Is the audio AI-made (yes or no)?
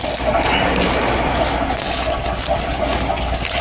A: no